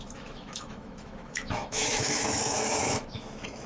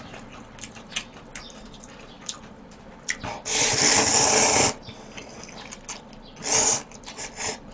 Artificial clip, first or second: first